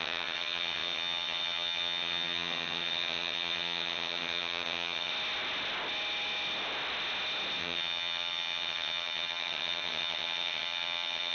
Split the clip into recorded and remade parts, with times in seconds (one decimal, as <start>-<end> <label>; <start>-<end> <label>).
0.0-5.1 remade; 5.1-7.6 recorded; 7.6-11.3 remade